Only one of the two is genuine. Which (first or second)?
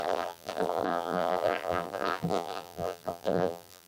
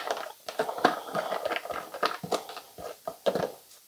second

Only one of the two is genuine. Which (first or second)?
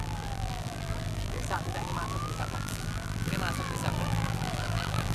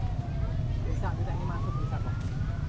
second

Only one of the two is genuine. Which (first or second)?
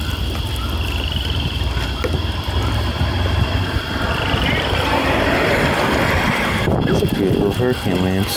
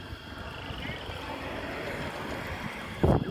second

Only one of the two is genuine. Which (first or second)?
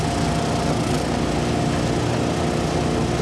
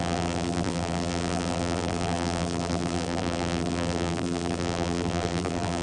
first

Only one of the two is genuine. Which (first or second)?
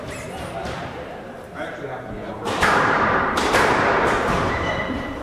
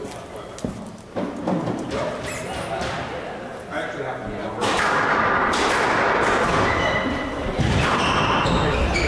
second